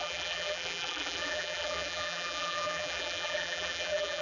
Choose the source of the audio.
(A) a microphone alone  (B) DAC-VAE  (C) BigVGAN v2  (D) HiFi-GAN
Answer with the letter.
C